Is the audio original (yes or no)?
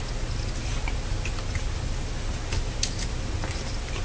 yes